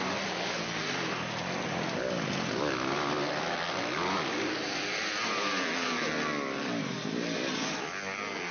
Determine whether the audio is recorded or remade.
recorded